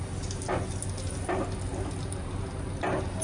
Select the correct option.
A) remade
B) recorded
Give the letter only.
B